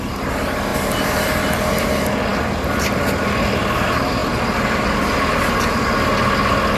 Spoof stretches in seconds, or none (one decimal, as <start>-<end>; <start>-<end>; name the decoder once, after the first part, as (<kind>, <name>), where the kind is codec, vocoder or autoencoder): none

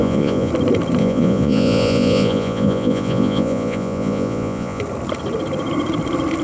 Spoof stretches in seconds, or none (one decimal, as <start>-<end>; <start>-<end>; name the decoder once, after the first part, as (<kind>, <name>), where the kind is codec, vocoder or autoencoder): 0.0-0.5 (vocoder, Vocos); 1.0-4.8

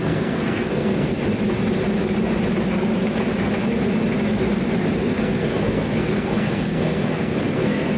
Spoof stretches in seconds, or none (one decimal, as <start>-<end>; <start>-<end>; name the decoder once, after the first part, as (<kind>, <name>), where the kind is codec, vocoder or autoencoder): 0.0-1.1 (codec, SNAC); 5.2-8.0

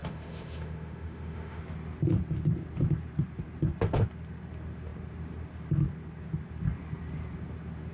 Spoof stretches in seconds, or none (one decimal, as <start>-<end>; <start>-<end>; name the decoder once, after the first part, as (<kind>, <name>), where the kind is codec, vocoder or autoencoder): 0.0-1.6 (autoencoder, DAC-VAE)

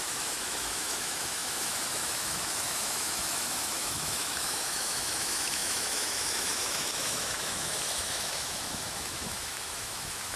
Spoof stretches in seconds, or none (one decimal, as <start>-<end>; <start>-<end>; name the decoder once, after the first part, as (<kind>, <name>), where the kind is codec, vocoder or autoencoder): 0.0-10.4 (autoencoder, DAC-VAE)

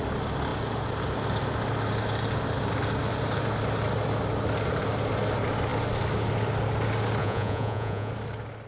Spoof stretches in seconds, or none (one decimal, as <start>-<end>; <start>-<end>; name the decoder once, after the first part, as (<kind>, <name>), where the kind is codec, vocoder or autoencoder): 7.2-8.1 (vocoder, Vocos)

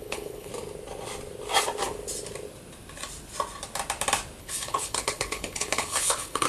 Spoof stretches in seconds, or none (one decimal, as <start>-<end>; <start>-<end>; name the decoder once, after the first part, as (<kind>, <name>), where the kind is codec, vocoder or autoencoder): 0.0-0.5 (codec, HILCodec); 4.4-6.5

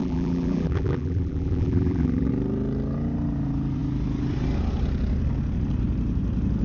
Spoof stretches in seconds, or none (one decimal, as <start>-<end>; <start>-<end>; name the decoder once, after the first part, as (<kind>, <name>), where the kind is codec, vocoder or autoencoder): 0.0-2.3 (vocoder, BigVGAN v2)